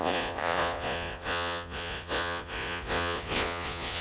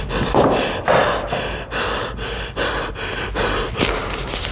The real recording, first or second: second